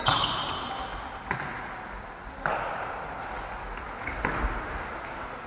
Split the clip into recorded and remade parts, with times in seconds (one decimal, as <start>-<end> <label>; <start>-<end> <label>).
0.0-0.9 remade; 0.9-4.2 recorded; 4.2-5.5 remade